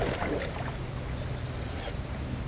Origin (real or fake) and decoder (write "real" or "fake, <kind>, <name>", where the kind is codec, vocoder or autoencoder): real